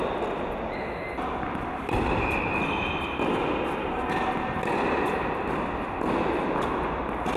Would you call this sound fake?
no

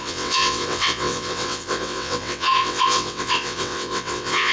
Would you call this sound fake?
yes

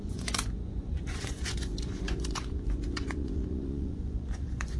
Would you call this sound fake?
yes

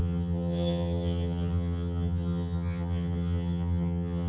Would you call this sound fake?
yes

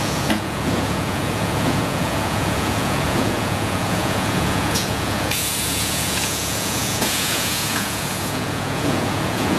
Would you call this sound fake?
yes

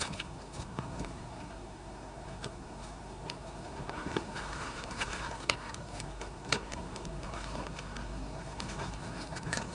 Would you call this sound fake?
yes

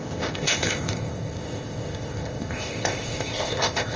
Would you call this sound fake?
yes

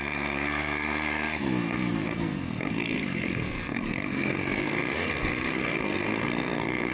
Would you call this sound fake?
yes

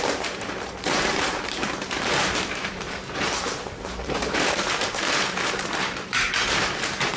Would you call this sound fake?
yes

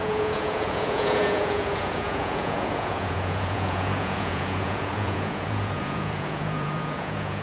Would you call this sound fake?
yes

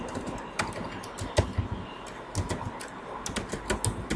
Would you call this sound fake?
no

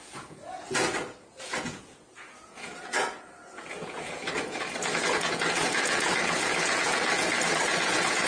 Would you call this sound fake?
yes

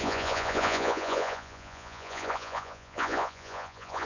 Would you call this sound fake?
yes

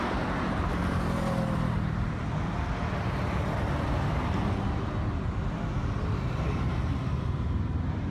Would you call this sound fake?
no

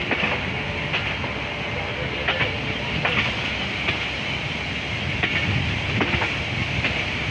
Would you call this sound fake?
no